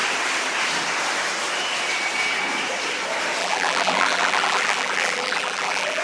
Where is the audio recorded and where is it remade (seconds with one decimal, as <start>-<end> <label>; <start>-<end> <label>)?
0.0-3.4 recorded; 3.4-6.0 remade